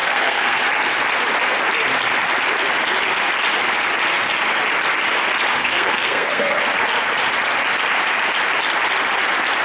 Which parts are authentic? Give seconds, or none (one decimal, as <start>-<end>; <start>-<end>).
0.6-5.6; 6.6-9.6